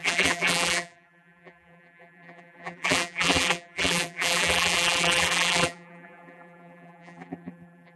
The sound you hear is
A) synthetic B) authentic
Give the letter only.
A